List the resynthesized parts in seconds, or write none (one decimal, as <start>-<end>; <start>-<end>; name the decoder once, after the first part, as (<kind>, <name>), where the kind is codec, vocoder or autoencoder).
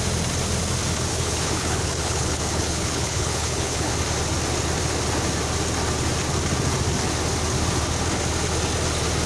1.1-3.9 (codec, HILCodec)